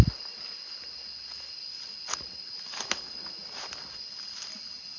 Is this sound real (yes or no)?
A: yes